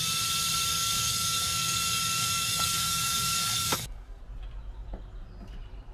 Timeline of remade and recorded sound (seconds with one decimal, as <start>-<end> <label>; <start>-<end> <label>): 0.0-0.7 recorded; 0.7-4.2 remade; 4.2-5.9 recorded